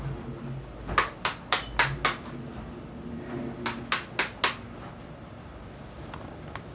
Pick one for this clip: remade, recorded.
recorded